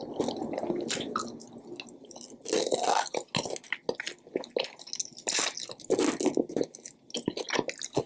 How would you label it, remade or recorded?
recorded